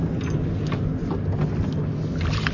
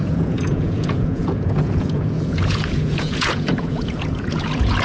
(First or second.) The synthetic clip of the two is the second